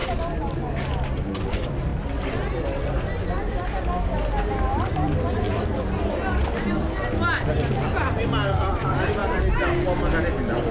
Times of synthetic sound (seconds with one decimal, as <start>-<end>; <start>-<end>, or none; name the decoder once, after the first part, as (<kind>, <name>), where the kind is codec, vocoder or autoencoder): 1.4-1.9 (vocoder, BigVGAN v2); 4.7-9.2